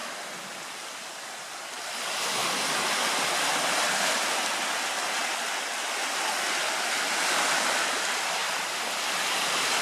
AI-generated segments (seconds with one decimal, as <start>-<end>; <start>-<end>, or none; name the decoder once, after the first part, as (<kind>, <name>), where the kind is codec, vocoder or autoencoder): 0.6-2.4 (vocoder, BigVGAN v2); 6.2-9.8